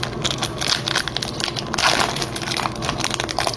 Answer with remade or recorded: recorded